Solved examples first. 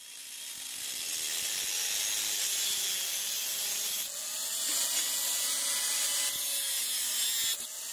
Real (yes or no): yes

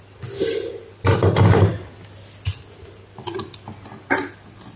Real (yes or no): yes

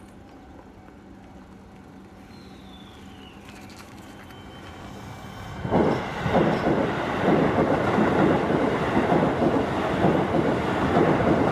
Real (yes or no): yes